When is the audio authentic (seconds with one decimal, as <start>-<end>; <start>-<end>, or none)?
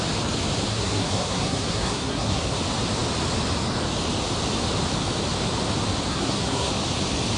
0.0-0.7; 2.6-6.1; 6.7-7.4